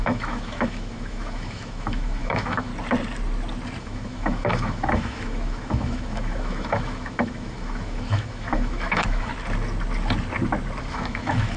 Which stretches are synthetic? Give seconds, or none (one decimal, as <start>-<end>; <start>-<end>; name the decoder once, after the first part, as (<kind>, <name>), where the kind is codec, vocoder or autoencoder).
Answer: 0.0-2.7 (autoencoder, DAC-VAE); 3.8-9.3; 10.8-11.6

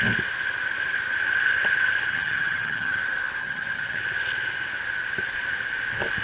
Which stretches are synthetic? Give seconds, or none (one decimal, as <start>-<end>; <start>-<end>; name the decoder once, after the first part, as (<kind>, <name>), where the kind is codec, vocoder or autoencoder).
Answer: 2.1-3.0 (vocoder, HiFi-GAN); 3.4-4.0

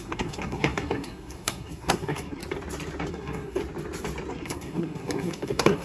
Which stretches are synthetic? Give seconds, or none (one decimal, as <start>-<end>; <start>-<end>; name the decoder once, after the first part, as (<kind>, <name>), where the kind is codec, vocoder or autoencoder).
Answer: 0.0-2.4 (codec, SNAC); 3.1-3.6; 4.3-5.8

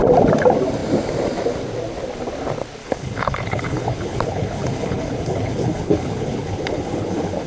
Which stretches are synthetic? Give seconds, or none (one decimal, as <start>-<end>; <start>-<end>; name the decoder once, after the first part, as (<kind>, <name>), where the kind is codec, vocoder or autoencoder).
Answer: 2.8-7.5 (codec, HILCodec)